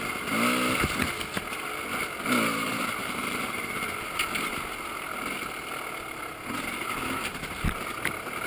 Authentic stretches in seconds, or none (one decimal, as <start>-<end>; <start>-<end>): 0.0-3.0; 4.0-8.5